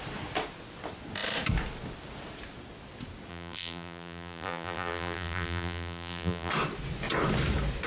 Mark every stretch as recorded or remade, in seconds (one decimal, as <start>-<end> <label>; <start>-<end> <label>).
0.0-3.3 recorded; 3.3-6.5 remade; 6.5-7.9 recorded